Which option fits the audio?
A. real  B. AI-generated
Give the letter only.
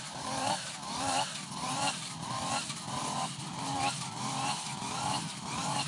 B